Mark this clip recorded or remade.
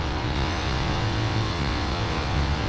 remade